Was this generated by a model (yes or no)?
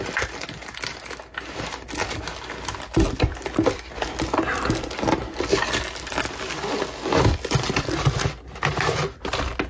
no